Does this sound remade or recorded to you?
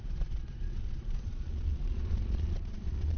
remade